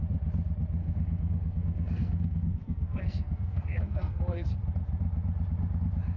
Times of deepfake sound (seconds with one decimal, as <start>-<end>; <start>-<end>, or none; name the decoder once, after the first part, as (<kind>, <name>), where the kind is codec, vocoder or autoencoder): 0.8-4.5 (codec, SNAC)